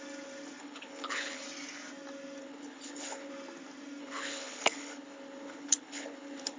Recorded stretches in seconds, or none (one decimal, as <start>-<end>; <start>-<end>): 0.0-0.6; 1.4-2.4; 3.3-4.0